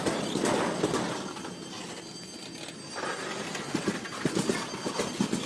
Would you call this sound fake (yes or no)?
no